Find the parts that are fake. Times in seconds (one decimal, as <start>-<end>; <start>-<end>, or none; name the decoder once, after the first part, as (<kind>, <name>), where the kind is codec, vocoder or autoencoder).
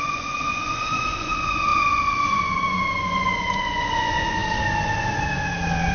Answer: 0.0-4.4 (vocoder, Vocos)